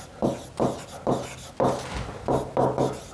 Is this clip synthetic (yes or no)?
no